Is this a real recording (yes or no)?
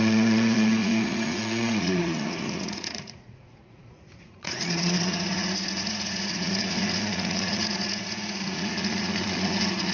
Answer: no